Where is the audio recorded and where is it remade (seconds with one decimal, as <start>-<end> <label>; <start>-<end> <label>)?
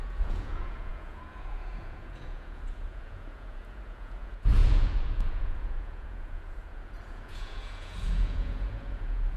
0.0-9.4 remade